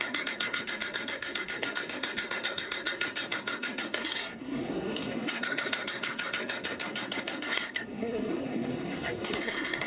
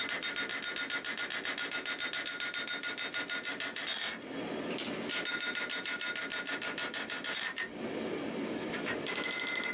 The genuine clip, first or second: second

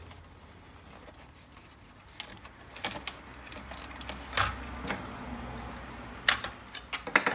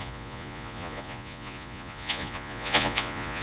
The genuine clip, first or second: first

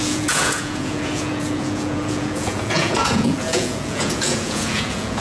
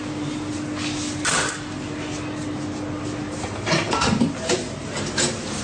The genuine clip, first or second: second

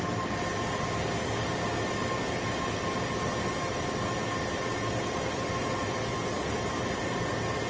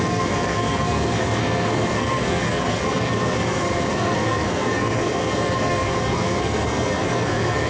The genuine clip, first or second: first